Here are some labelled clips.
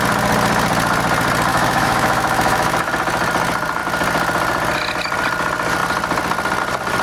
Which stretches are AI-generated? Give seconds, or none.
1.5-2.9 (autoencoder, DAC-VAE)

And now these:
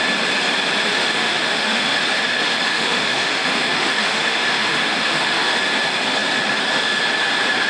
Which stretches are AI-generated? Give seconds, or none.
0.9-2.0 (autoencoder, DAC-VAE); 2.7-5.6